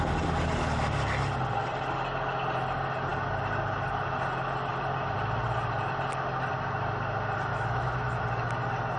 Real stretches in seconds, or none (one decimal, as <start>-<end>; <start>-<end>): 0.0-7.5; 8.2-9.0